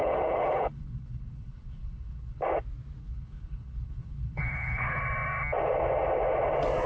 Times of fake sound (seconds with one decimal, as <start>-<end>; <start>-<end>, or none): 0.0-2.4; 3.0-5.0